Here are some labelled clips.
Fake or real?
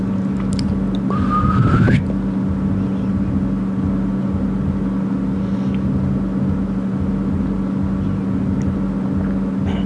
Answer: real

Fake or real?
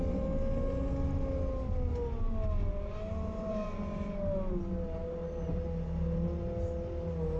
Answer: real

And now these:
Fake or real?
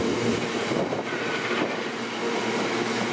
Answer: real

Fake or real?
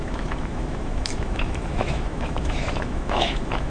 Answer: fake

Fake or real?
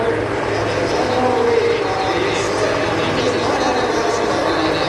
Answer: real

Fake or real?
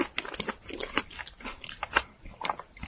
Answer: real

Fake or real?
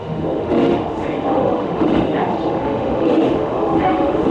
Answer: fake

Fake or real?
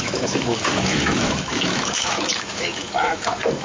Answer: fake